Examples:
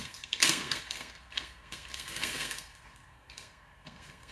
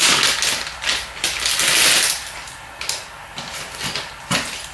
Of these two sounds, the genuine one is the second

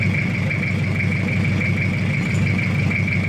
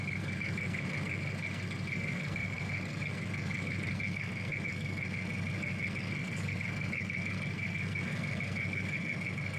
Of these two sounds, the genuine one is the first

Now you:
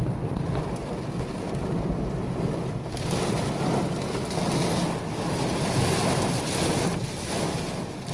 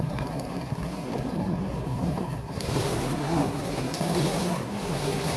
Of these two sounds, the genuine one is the first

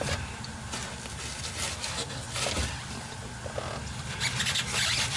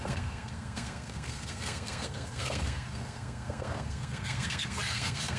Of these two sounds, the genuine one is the first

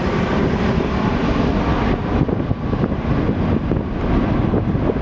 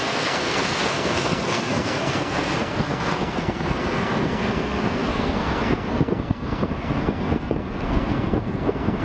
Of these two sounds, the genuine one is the first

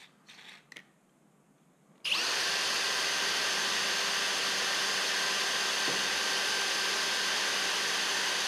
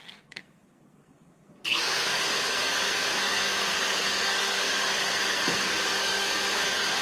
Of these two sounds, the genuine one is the first